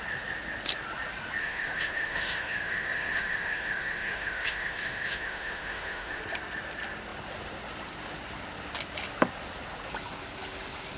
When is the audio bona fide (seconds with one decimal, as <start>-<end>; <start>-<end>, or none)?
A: 0.0-1.4; 6.2-11.0

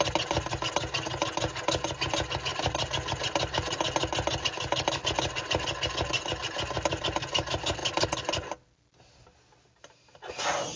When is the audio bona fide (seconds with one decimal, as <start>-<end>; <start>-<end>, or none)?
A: 0.0-10.8

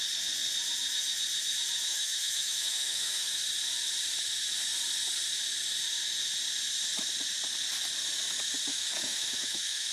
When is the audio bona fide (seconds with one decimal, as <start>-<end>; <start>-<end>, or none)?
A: 0.0-1.9; 3.4-8.7